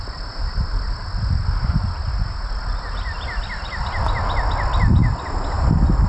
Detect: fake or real real